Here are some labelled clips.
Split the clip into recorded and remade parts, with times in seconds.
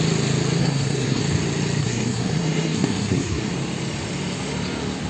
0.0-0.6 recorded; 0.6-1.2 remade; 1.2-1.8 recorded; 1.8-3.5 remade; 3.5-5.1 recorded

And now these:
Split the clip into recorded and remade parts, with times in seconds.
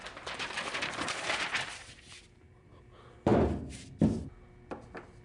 0.0-3.3 remade; 3.3-4.7 recorded; 4.7-5.2 remade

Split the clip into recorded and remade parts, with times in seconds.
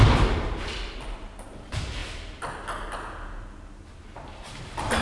0.0-5.0 recorded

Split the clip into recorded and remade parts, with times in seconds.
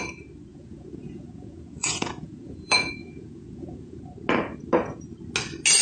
0.0-0.5 recorded; 0.5-4.0 remade; 4.0-5.8 recorded